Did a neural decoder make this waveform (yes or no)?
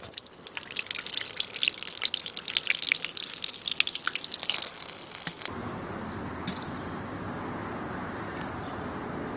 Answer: no